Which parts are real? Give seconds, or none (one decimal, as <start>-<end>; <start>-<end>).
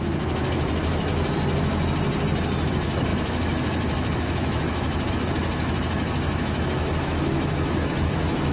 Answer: 1.1-2.6